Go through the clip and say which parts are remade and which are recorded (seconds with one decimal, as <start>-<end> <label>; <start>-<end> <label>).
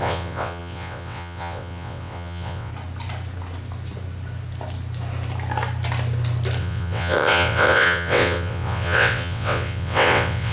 0.0-2.7 remade; 2.7-6.6 recorded; 6.6-10.5 remade